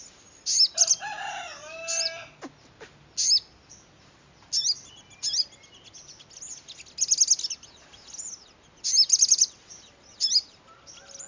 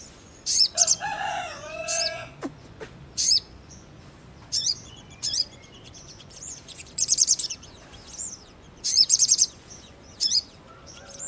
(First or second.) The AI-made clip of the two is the second